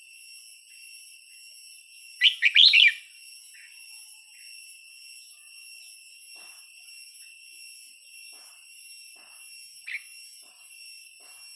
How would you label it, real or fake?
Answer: real